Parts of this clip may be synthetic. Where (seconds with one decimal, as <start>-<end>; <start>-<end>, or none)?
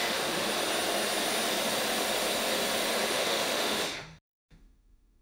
0.0-0.4; 3.1-5.2